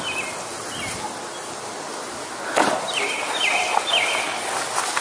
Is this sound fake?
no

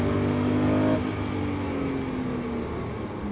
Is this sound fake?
no